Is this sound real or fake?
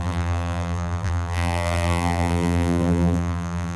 fake